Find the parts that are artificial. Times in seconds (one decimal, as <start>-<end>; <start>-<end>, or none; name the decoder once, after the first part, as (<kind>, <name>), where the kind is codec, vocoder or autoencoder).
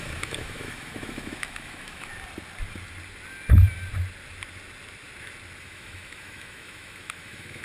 0.0-2.1 (autoencoder, DAC-VAE); 5.6-7.6